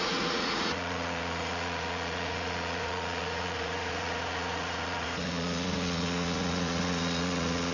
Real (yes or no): no